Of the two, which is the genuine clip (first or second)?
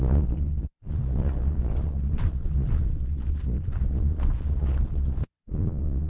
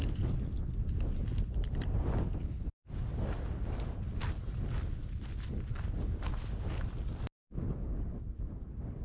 second